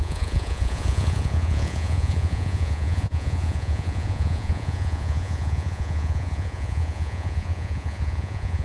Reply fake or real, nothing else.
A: fake